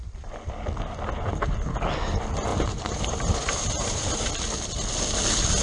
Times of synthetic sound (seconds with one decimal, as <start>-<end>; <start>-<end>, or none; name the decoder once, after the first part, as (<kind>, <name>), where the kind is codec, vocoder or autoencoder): 2.5-4.3 (vocoder, BigVGAN v2)